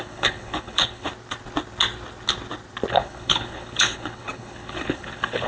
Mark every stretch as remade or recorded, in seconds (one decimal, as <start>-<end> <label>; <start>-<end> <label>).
0.0-1.1 remade; 1.1-2.9 recorded; 2.9-5.5 remade